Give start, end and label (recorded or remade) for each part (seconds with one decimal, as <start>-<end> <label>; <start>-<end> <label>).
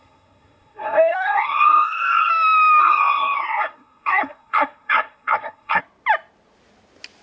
0.0-2.3 remade; 2.3-2.8 recorded; 2.8-5.8 remade; 5.8-7.2 recorded